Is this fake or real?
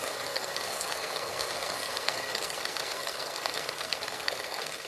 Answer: fake